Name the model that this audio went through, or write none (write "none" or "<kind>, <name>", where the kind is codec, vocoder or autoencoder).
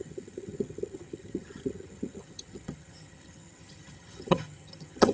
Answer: vocoder, HiFi-GAN